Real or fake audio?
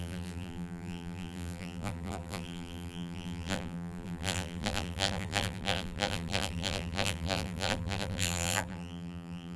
fake